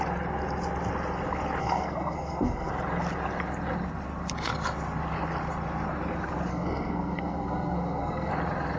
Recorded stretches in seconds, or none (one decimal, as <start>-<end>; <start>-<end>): 0.0-1.6; 2.7-6.5; 8.3-8.8